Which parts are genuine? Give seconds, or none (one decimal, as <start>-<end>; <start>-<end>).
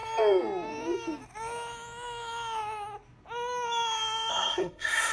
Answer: 0.0-4.3